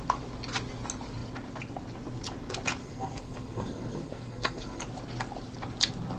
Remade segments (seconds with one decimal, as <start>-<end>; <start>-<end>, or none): 2.8-4.8